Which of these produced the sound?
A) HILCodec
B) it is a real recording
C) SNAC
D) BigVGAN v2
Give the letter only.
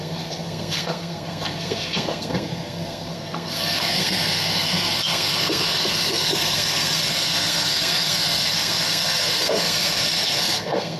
C